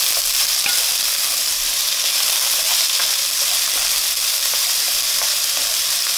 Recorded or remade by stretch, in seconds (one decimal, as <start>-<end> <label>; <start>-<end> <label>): 0.0-6.2 remade